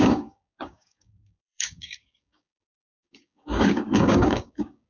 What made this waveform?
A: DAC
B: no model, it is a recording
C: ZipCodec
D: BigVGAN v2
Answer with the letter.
A